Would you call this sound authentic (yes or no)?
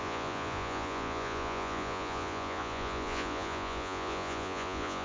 no